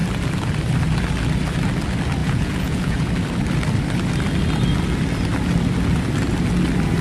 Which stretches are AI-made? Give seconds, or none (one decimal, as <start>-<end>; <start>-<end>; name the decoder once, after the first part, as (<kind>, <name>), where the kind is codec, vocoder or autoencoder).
2.2-3.1 (vocoder, Vocos)